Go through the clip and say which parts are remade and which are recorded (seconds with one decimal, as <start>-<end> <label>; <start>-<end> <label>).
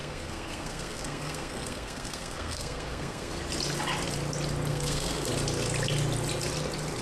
0.0-3.4 remade; 3.4-4.7 recorded; 4.7-5.3 remade; 5.3-7.0 recorded